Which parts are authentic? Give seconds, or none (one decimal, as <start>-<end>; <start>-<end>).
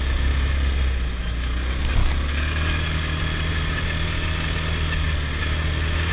0.0-2.0; 3.2-6.1